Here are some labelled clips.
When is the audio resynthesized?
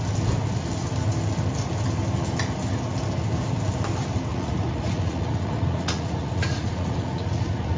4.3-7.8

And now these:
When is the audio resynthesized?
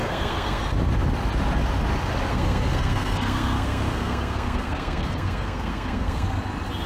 0.0-0.6; 2.3-6.4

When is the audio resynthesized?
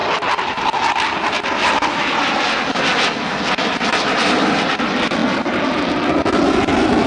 3.9-5.2; 6.3-7.1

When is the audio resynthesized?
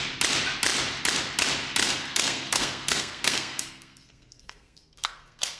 1.8-5.6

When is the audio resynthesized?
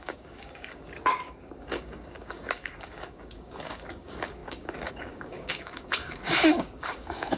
0.0-7.4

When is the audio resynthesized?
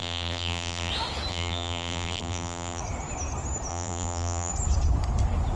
0.0-0.9; 1.3-2.8; 3.7-4.5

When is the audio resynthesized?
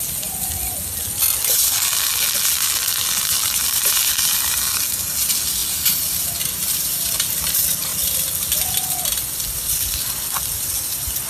none